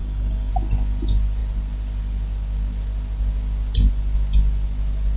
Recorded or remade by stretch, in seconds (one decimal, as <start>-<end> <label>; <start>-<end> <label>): 0.0-0.5 remade; 0.5-5.2 recorded